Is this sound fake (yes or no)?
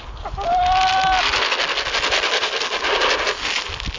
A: no